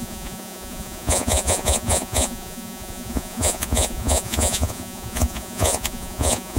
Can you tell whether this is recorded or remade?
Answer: remade